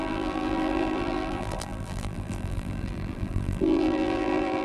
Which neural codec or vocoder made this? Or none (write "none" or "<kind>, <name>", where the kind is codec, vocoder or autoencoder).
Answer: vocoder, BigVGAN v2